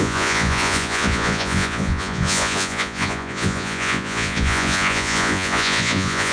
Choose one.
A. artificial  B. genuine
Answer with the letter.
A